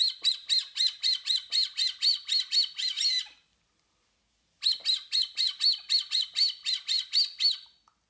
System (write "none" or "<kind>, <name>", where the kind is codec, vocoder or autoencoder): none